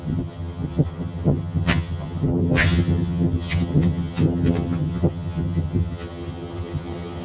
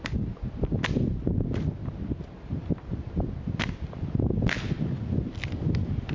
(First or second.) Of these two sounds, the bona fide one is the second